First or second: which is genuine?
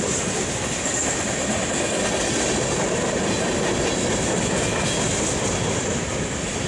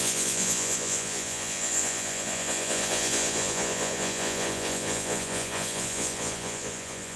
first